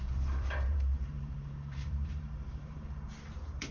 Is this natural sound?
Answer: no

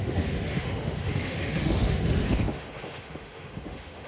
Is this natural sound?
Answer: no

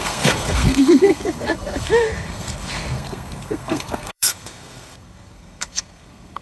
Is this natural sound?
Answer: no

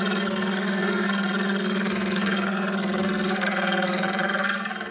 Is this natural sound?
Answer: no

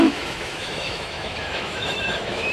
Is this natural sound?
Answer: no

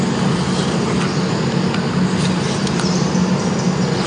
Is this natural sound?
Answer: yes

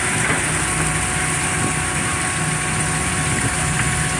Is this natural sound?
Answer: yes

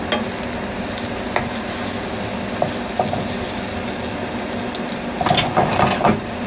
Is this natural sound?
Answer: yes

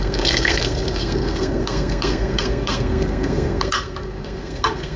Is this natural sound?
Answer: no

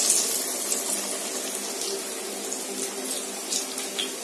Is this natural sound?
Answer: yes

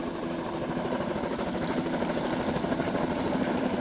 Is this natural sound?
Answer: no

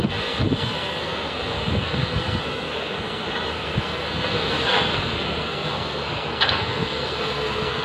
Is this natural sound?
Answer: no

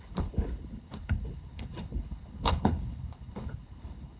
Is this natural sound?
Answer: no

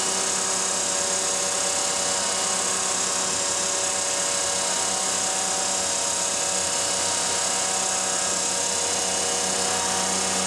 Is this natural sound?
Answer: yes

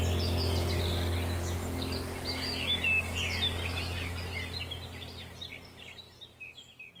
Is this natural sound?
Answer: yes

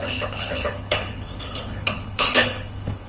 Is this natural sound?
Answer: no